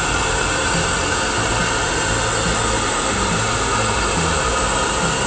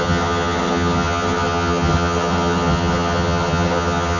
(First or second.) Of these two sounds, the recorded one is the first